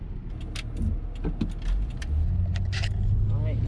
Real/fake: real